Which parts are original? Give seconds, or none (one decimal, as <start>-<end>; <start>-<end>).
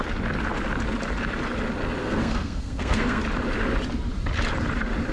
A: 0.0-2.0; 3.2-5.1